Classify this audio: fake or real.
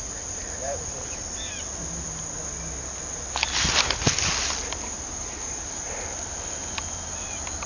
real